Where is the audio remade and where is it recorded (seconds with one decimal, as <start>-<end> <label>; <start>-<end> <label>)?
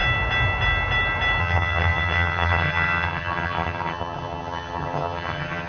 0.0-1.4 recorded; 1.4-5.7 remade